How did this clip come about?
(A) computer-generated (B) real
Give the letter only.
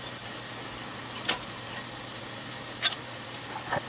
B